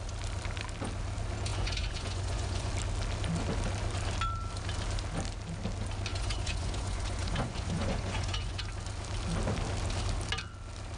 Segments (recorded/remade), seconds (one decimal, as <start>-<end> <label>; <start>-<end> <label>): 0.0-1.5 recorded; 1.5-2.7 remade; 2.7-6.1 recorded; 6.1-8.6 remade; 8.6-11.0 recorded